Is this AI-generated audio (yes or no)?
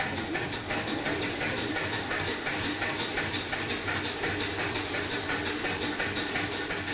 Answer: no